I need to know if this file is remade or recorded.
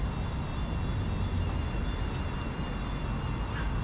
recorded